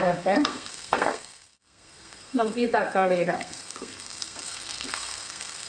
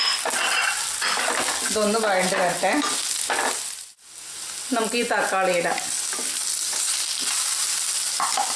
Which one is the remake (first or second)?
first